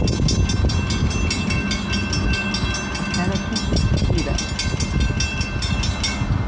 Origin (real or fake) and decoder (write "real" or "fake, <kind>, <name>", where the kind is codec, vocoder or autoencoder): real